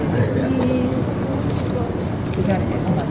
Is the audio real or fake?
fake